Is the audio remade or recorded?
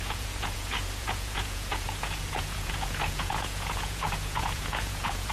remade